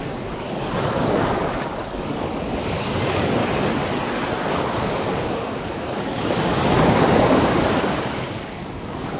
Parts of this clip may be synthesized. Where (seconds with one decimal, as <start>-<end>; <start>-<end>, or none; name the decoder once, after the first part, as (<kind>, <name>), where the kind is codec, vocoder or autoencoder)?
0.0-3.4 (codec, DAC); 4.5-9.2